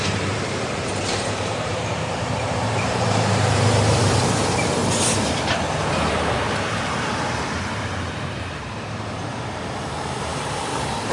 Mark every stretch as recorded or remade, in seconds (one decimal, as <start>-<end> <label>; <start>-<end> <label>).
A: 0.0-4.8 remade; 4.8-6.0 recorded; 6.0-11.1 remade